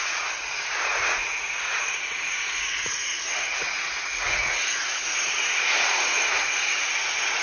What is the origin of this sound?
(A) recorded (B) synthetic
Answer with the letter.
B